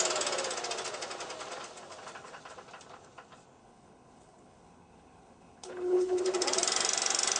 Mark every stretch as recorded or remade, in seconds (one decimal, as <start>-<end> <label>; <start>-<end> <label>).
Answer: 0.0-3.6 recorded; 3.6-6.2 remade; 6.2-7.4 recorded